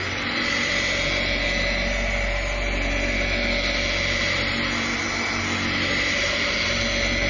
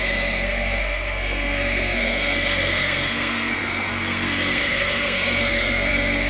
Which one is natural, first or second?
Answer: first